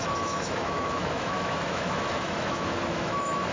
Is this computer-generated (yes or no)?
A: yes